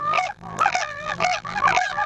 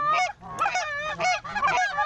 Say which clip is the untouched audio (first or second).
second